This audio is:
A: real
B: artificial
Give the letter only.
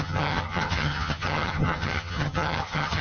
B